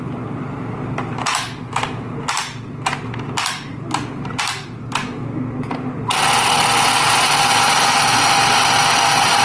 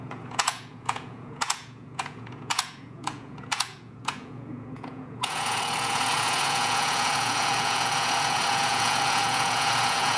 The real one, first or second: first